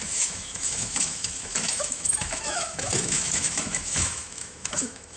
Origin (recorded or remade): remade